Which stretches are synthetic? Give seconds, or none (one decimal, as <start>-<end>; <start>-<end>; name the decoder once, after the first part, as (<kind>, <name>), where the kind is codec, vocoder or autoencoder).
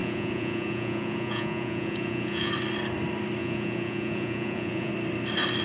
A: 0.0-2.5 (vocoder, Vocos); 3.4-4.9